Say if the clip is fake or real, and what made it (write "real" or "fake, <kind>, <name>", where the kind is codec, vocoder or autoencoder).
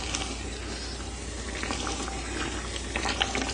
real